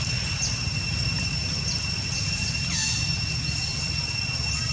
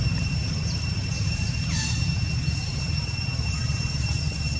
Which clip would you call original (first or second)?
first